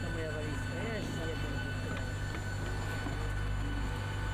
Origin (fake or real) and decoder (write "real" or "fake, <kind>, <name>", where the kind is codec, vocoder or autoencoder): real